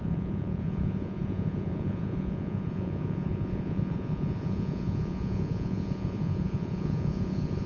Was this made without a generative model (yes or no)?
no